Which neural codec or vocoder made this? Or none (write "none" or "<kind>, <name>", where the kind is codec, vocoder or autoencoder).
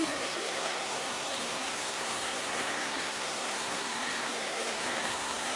codec, SNAC